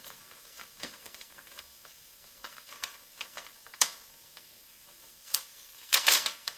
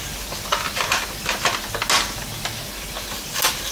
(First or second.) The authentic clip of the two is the second